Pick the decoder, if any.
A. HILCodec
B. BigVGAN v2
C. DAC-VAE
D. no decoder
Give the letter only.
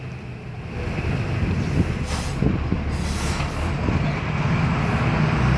D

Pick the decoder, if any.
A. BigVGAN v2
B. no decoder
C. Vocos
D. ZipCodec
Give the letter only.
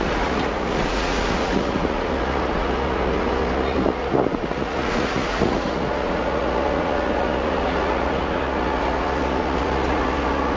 C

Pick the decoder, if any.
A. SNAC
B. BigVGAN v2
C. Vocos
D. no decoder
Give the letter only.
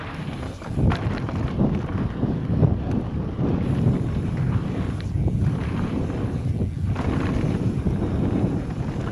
D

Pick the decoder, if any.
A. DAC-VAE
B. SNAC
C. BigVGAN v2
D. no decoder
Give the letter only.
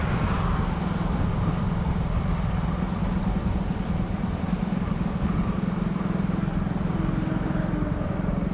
D